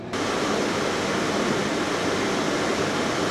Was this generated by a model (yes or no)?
no